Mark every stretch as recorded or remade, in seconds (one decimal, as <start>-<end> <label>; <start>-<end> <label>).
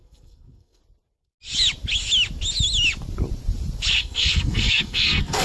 0.0-0.8 remade; 0.8-4.0 recorded; 4.0-5.4 remade